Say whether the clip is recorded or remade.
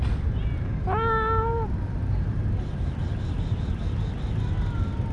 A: recorded